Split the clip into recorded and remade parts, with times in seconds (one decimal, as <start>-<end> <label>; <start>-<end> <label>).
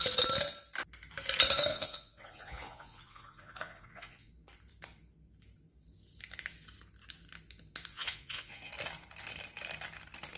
0.0-1.7 recorded; 1.7-4.3 remade; 4.3-7.9 recorded; 7.9-8.7 remade; 8.7-10.4 recorded